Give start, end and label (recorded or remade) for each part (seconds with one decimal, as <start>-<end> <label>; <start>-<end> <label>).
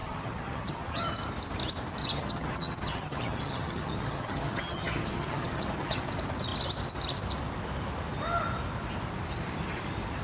0.0-1.0 remade; 1.0-2.0 recorded; 2.0-6.0 remade; 6.0-10.2 recorded